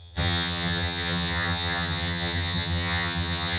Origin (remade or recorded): remade